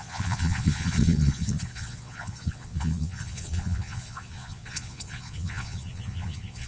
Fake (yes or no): yes